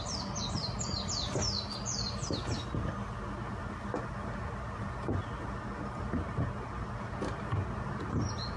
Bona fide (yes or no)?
yes